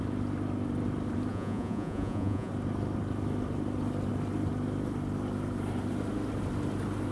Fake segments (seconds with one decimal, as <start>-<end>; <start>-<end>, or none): 1.3-2.5